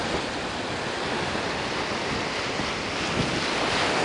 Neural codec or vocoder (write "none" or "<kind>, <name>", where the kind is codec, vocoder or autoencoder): none